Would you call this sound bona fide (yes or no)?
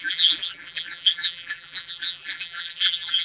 no